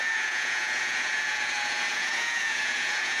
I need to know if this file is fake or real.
fake